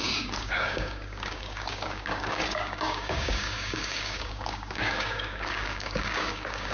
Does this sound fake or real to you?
fake